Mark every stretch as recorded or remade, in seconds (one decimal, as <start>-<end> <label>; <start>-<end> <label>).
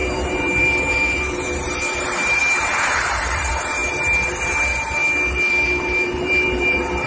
0.0-3.8 remade; 3.8-4.4 recorded; 4.4-5.0 remade; 5.0-5.5 recorded; 5.5-7.1 remade